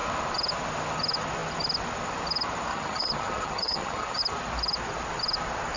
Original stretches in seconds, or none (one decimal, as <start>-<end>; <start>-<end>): 0.0-2.7; 4.2-5.8